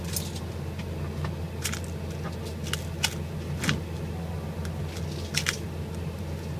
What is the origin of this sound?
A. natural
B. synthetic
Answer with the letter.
A